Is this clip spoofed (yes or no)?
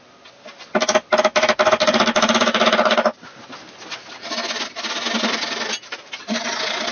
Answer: no